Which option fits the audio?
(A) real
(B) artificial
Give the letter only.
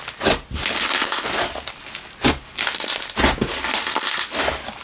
A